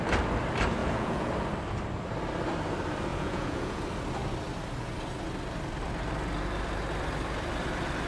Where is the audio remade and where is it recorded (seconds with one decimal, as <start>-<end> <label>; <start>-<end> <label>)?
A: 0.0-0.8 recorded; 0.8-1.3 remade; 1.3-3.1 recorded; 3.1-3.8 remade; 3.8-8.1 recorded